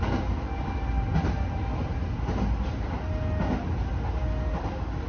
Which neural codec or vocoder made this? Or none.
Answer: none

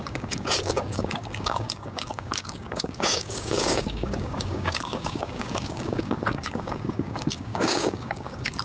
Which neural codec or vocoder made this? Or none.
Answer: codec, DAC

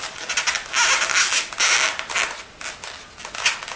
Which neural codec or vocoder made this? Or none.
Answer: none